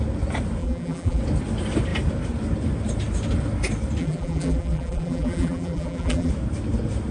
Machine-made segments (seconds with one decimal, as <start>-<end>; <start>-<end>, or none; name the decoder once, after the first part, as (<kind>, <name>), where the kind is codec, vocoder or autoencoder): 0.6-1.2 (vocoder, BigVGAN v2); 4.0-6.3